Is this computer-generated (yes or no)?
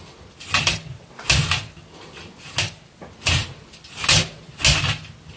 no